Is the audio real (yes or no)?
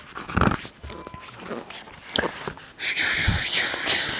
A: yes